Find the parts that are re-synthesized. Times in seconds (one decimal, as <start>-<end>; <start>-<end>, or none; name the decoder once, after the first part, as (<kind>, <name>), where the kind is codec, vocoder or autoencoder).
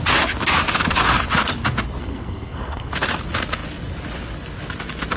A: 2.0-2.9 (codec, SNAC)